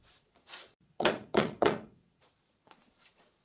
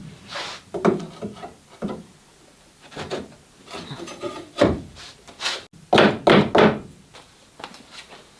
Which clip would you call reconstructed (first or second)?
first